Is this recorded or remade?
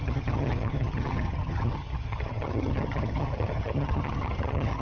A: remade